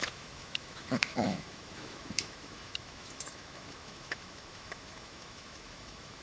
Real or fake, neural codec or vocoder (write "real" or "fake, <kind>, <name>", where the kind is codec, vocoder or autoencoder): fake, autoencoder, DAC-VAE